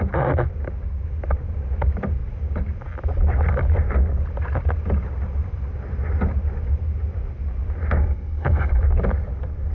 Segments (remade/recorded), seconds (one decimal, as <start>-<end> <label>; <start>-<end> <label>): 0.0-8.0 recorded; 8.0-8.8 remade; 8.8-9.7 recorded